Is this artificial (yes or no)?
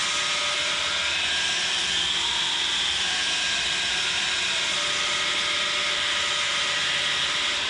no